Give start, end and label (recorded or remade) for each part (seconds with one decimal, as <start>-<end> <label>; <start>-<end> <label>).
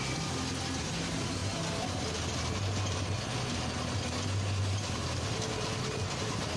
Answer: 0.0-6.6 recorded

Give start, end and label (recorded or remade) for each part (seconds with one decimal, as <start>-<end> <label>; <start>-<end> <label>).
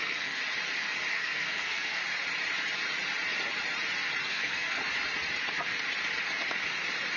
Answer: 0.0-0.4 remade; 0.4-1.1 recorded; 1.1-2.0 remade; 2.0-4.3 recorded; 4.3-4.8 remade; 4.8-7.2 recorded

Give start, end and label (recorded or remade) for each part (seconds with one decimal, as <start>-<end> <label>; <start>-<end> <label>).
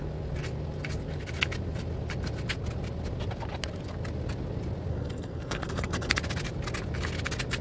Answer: 0.0-4.9 recorded; 4.9-6.1 remade; 6.1-7.6 recorded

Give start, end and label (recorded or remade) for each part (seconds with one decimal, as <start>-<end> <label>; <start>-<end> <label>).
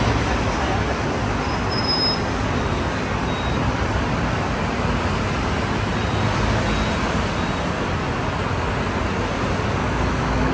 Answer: 0.0-9.8 recorded; 9.8-10.5 remade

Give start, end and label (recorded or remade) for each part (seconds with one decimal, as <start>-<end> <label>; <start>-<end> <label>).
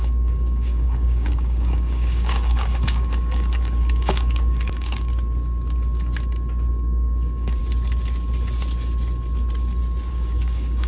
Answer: 0.0-5.1 remade; 5.1-6.7 recorded; 6.7-7.6 remade; 7.6-10.1 recorded; 10.1-10.9 remade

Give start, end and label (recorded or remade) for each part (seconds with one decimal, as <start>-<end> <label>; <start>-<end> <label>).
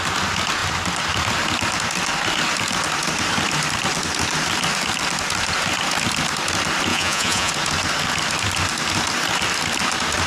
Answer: 0.0-6.9 recorded; 6.9-7.5 remade; 7.5-10.3 recorded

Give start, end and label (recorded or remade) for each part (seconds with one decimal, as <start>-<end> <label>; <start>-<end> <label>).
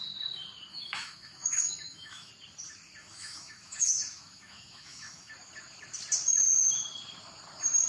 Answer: 0.0-0.7 recorded; 0.7-2.3 remade; 2.3-3.0 recorded; 3.0-5.3 remade; 5.3-7.9 recorded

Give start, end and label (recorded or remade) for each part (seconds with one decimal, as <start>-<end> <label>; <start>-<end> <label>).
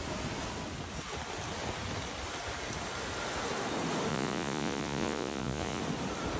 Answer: 0.0-4.1 recorded; 4.1-5.8 remade; 5.8-6.4 recorded